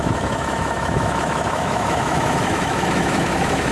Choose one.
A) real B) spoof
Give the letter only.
B